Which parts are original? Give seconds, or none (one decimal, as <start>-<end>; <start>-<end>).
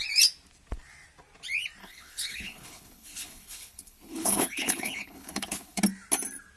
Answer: 0.0-1.8; 5.8-6.6